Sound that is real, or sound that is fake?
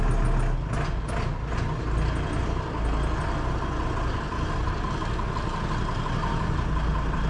real